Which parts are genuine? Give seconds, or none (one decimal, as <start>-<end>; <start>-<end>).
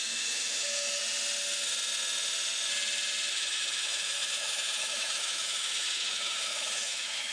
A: 1.0-3.3